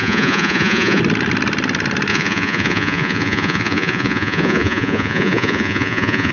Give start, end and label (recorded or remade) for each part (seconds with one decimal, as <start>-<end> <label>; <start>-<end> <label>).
0.0-1.0 remade; 1.0-2.1 recorded; 2.1-6.3 remade